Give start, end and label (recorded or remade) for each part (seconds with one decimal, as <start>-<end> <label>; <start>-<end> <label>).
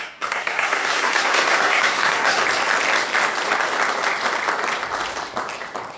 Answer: 0.0-2.4 remade; 2.4-6.0 recorded